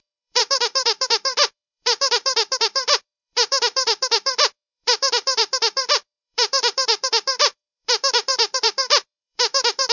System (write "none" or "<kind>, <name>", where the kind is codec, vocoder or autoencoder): vocoder, BigVGAN v2